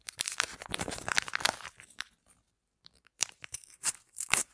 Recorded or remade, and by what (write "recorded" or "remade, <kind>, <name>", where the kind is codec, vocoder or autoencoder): remade, vocoder, BigVGAN v2